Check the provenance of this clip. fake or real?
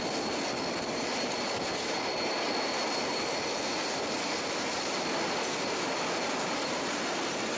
real